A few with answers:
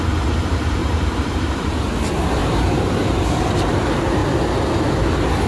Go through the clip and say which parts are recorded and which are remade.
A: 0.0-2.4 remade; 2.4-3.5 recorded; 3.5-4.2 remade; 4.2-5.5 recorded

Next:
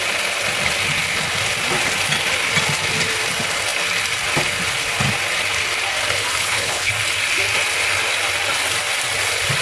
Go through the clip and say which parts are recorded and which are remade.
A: 0.0-6.4 recorded; 6.4-6.9 remade; 6.9-9.6 recorded

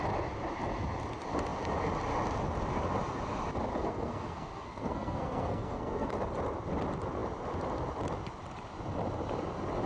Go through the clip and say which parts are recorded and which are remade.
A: 0.0-3.7 recorded; 3.7-6.1 remade; 6.1-9.9 recorded

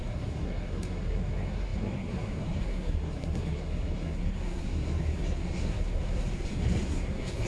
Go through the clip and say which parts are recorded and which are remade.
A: 0.0-7.5 remade

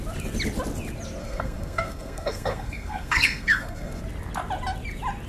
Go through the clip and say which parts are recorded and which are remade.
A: 0.0-1.2 recorded; 1.2-4.0 remade; 4.0-5.3 recorded